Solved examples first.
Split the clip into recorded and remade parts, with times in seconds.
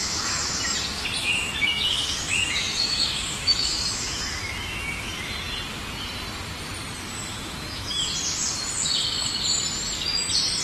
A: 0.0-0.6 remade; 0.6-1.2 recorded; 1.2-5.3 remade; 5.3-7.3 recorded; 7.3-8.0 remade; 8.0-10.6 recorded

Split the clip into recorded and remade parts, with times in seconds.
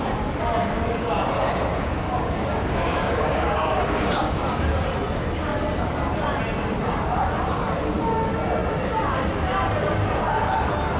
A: 0.0-1.7 recorded; 1.7-4.7 remade; 4.7-11.0 recorded